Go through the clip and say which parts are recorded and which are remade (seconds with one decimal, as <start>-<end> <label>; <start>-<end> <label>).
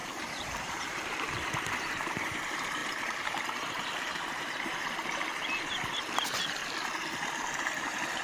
0.0-4.8 remade; 4.8-6.0 recorded; 6.0-6.6 remade; 6.6-7.3 recorded; 7.3-8.2 remade